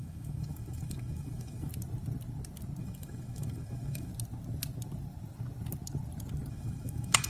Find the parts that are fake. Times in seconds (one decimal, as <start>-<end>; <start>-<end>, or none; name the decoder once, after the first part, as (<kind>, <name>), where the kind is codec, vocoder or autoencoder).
0.0-1.7 (autoencoder, DAC-VAE); 2.8-4.1; 6.5-7.3